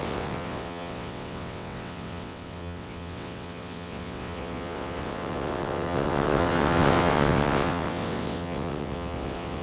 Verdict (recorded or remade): remade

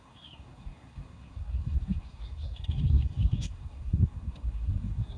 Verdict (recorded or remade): remade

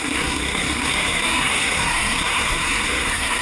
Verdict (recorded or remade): remade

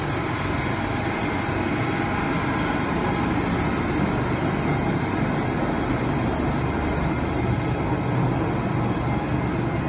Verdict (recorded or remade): recorded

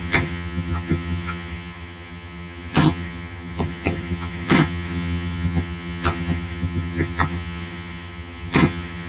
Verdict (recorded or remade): remade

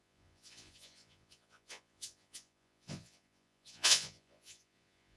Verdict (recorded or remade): remade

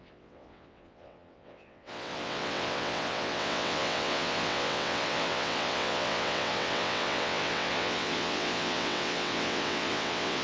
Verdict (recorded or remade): remade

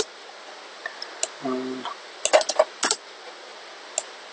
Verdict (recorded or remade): recorded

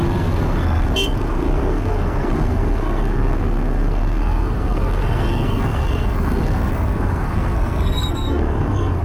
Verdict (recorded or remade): remade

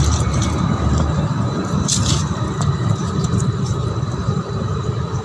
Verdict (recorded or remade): remade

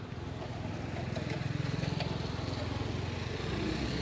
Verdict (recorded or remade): recorded